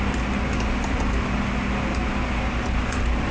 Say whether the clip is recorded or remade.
recorded